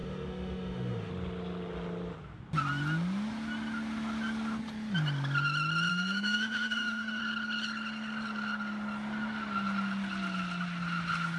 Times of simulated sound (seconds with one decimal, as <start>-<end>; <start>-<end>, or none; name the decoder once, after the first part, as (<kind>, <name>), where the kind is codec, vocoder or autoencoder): 0.0-1.1 (autoencoder, DAC-VAE); 5.9-7.2